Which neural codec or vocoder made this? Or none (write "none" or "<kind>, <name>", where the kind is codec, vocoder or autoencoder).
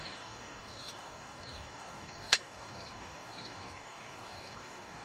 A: codec, DAC